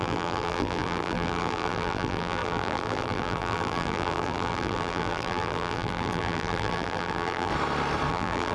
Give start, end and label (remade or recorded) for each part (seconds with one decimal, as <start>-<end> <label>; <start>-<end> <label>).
0.0-7.5 remade; 7.5-8.1 recorded; 8.1-8.5 remade